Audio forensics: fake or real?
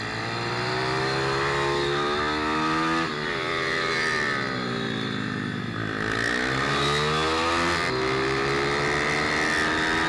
real